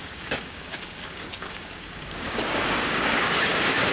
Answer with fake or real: fake